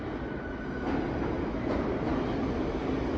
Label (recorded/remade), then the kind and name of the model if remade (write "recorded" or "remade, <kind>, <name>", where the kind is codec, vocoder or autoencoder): recorded